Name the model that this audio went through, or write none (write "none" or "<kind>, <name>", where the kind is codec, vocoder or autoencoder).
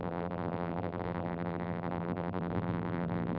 vocoder, BigVGAN v2